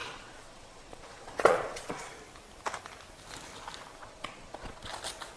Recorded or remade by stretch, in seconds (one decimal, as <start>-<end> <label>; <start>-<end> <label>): 0.0-2.1 remade; 2.1-4.0 recorded; 4.0-4.9 remade; 4.9-5.4 recorded